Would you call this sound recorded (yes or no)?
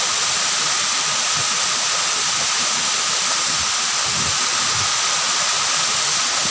yes